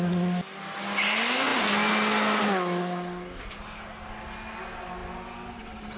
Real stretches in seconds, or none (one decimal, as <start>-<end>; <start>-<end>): 0.0-6.0